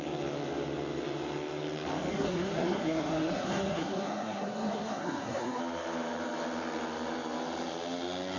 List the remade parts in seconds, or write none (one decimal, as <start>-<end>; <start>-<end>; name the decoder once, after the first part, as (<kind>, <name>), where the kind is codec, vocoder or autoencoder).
2.1-5.6 (codec, SNAC)